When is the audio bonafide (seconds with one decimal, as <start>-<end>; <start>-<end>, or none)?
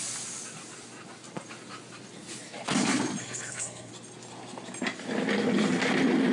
0.0-3.2; 3.9-6.3